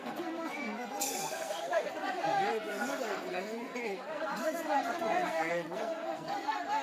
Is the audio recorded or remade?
remade